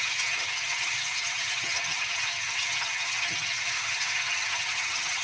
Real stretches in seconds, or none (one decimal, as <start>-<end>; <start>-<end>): none